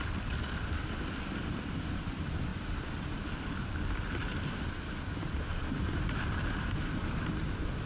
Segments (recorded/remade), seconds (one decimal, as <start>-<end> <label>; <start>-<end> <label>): 0.0-2.5 remade; 2.5-3.0 recorded; 3.0-4.3 remade; 4.3-7.1 recorded; 7.1-7.9 remade